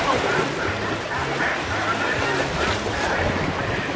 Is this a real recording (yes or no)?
yes